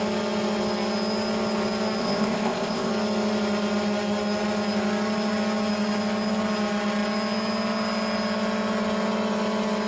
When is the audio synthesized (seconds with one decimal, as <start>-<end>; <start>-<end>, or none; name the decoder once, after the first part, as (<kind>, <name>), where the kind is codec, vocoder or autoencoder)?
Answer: 2.0-2.9 (codec, ZipCodec)